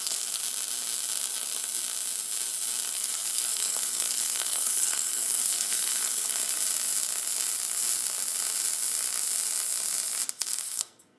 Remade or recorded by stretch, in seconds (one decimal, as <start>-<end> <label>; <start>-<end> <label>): 0.0-0.4 remade; 0.4-2.9 recorded; 2.9-6.4 remade; 6.4-10.3 recorded; 10.3-11.2 remade